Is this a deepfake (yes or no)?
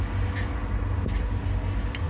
no